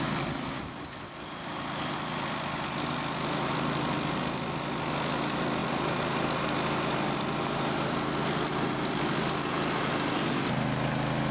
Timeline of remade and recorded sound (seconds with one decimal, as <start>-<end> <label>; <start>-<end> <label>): 0.0-11.3 recorded